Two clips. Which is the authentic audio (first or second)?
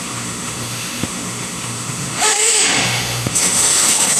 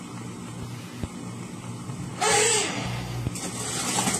second